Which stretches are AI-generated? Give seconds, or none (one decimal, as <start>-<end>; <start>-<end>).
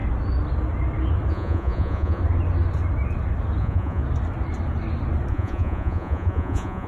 1.3-2.2; 3.6-4.0; 5.3-6.9